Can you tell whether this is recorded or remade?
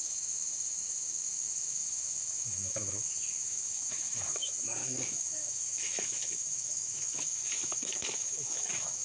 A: remade